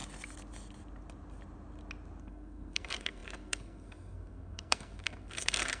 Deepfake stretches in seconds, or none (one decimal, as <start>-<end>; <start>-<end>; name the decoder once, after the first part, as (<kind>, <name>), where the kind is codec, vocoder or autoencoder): 2.2-5.8 (codec, SNAC)